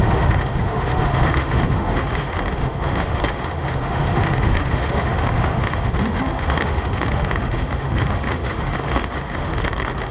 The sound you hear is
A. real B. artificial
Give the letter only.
B